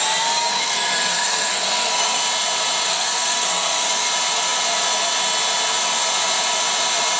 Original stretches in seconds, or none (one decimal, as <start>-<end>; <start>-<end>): 0.0-0.5; 2.2-2.9; 4.1-7.2